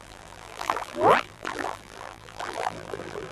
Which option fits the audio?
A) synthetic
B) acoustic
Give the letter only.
A